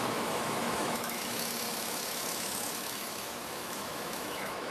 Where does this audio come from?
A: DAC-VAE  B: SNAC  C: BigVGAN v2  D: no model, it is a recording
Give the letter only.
A